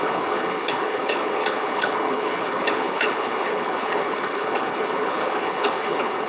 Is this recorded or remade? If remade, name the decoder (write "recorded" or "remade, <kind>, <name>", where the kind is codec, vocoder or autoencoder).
remade, codec, HILCodec